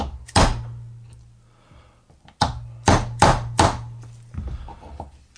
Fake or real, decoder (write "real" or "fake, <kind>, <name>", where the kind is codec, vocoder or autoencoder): real